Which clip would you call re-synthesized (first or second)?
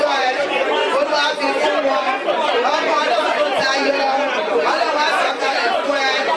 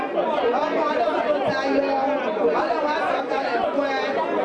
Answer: first